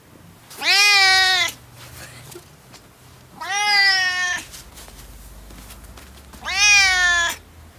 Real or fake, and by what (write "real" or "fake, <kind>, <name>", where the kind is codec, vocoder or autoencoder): real